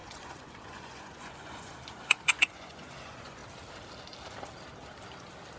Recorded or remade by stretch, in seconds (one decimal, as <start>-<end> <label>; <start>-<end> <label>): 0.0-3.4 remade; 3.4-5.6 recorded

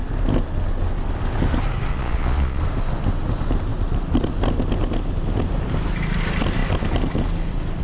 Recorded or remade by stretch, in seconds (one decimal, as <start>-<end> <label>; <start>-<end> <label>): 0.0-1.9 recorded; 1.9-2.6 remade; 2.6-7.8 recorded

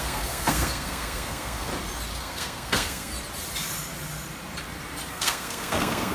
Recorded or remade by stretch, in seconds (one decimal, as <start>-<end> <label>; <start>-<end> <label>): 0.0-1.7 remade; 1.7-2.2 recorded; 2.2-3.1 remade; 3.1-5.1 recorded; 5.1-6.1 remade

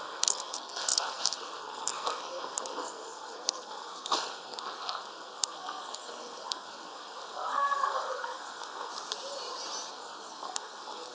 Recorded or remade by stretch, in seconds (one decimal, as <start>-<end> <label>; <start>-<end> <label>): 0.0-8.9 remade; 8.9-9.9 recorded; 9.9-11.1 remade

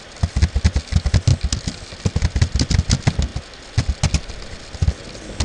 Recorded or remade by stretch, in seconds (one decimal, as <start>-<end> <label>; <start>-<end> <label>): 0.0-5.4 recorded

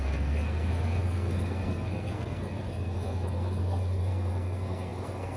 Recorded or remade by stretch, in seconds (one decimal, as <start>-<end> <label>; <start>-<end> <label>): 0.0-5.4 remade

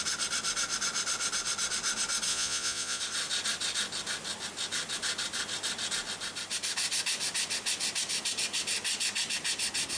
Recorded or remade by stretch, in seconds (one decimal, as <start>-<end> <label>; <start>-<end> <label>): 0.0-2.3 recorded; 2.3-3.0 remade; 3.0-10.0 recorded